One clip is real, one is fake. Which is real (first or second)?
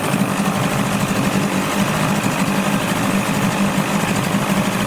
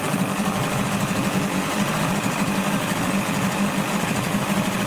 first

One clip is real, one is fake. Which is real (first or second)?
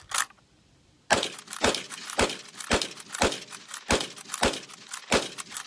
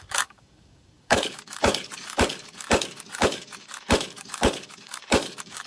first